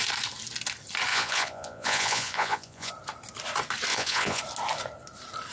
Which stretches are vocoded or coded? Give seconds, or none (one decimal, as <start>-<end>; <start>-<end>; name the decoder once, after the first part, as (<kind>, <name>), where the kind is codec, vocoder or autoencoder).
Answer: 1.1-2.9 (vocoder, Vocos); 3.9-4.4